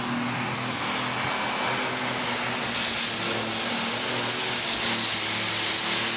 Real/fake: real